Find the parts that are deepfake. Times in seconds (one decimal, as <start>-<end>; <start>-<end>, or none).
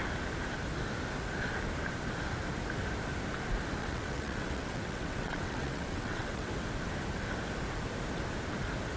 3.8-6.5